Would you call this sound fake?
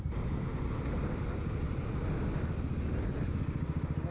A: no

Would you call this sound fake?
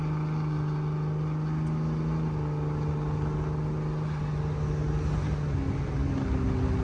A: no